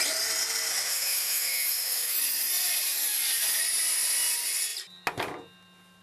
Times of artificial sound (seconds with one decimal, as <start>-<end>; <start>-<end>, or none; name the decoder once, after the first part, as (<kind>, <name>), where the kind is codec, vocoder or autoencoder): 0.7-2.2 (autoencoder, DAC-VAE)